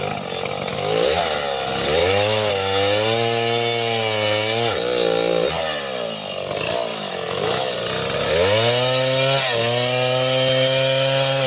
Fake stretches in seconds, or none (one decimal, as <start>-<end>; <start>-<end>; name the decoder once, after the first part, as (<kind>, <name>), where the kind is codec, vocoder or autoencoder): 0.7-1.2 (autoencoder, DAC-VAE); 2.0-2.5; 6.9-7.7